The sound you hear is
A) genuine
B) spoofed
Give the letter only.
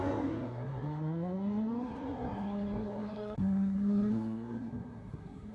B